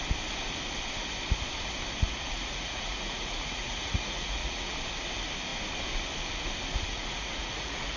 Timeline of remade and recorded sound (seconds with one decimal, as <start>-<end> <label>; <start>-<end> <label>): 0.0-2.1 recorded; 2.1-4.7 remade; 4.7-6.9 recorded; 6.9-8.0 remade